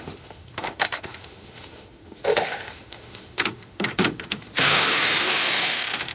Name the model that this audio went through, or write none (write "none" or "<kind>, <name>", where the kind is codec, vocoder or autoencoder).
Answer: autoencoder, DAC-VAE